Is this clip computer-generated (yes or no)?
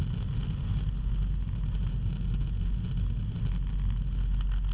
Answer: no